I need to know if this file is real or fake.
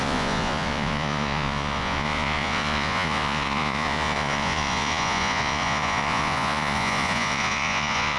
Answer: fake